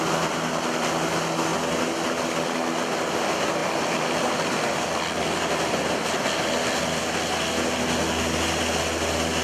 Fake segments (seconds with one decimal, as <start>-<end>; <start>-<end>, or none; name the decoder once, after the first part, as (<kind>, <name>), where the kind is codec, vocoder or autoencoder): 3.6-6.8 (vocoder, BigVGAN v2)